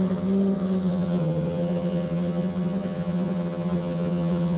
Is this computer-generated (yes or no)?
yes